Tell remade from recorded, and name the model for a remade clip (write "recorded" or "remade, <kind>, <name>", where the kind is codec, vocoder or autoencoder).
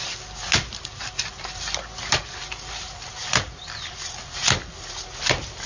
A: recorded